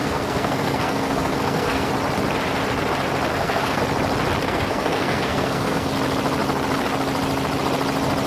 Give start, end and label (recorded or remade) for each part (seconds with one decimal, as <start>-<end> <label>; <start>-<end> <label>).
0.0-1.9 remade; 1.9-3.3 recorded; 3.3-3.8 remade; 3.8-4.4 recorded; 4.4-5.9 remade; 5.9-8.3 recorded